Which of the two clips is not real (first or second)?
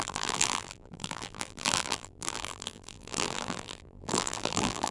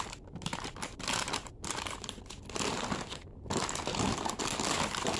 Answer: first